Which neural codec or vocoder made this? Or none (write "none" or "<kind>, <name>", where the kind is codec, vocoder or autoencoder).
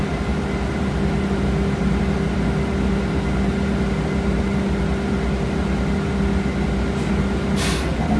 none